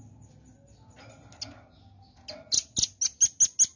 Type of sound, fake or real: real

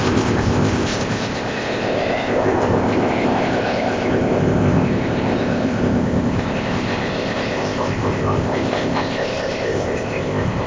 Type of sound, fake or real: fake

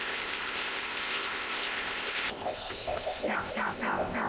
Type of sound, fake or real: fake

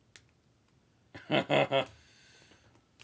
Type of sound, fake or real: real